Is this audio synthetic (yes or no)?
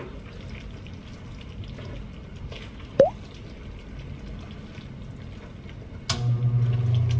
no